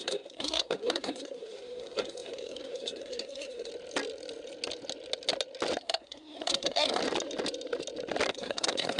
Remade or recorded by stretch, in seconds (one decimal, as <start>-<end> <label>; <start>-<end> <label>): 0.0-3.7 remade; 3.7-5.8 recorded; 5.8-7.0 remade; 7.0-8.3 recorded; 8.3-9.0 remade